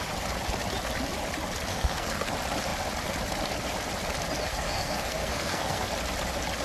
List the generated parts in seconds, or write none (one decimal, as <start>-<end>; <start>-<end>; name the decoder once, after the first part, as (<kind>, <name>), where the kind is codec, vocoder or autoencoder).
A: 1.7-2.3 (codec, SNAC); 4.5-5.9